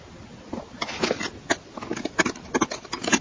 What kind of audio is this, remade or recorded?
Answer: recorded